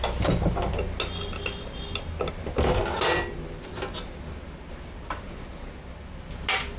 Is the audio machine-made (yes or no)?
no